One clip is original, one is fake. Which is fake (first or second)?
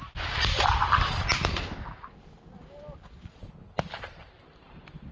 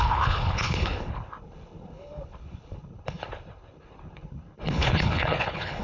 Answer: second